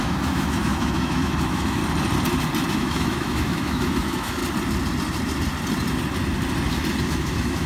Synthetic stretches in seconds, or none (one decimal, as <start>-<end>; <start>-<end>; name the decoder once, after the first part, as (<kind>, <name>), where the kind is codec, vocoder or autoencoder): 0.0-1.8 (autoencoder, DAC-VAE); 2.7-4.4; 7.0-7.7